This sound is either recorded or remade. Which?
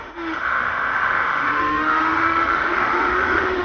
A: remade